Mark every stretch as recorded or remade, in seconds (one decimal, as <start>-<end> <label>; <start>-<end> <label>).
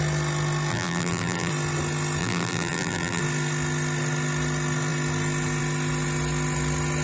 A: 0.0-0.7 recorded; 0.7-1.5 remade; 1.5-2.2 recorded; 2.2-3.2 remade; 3.2-7.0 recorded